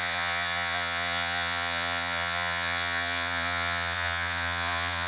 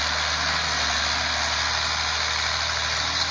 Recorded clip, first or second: second